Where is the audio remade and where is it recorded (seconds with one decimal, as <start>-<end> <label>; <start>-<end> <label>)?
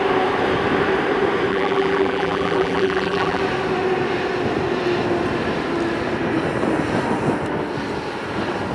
0.0-1.5 recorded; 1.5-3.4 remade; 3.4-8.7 recorded